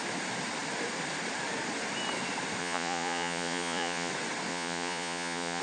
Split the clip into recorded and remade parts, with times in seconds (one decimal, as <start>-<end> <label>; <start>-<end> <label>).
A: 0.0-2.6 recorded; 2.6-4.1 remade; 4.1-4.5 recorded; 4.5-5.6 remade